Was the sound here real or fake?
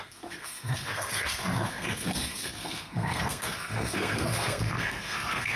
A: fake